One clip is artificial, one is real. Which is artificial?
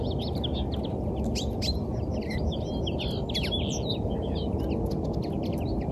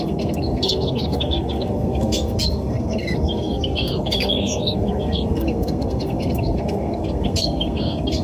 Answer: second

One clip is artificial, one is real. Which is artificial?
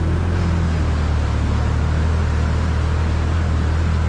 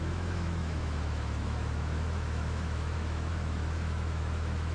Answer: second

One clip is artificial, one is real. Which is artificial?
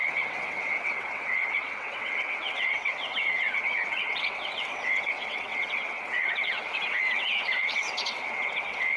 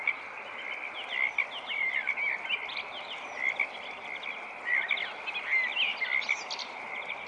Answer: first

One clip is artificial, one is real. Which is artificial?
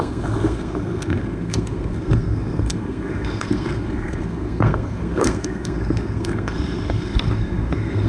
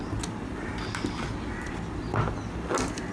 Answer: first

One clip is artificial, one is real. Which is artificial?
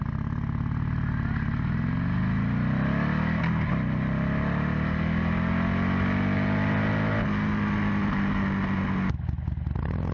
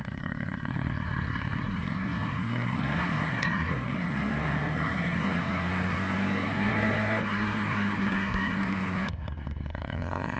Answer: second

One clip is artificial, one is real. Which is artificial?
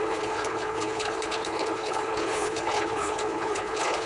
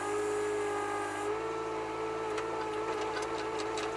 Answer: first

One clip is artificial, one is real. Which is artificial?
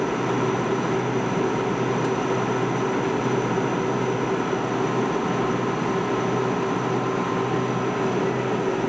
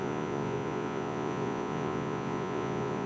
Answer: second